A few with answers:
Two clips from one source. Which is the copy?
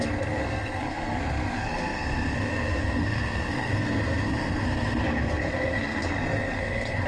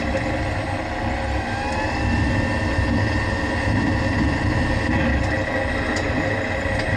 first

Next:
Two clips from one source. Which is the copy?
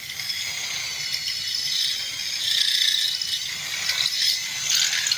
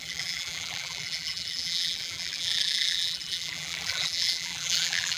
second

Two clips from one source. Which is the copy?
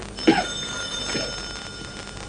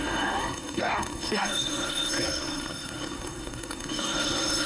second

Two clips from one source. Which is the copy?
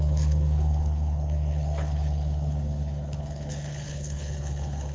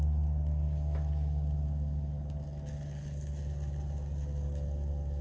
first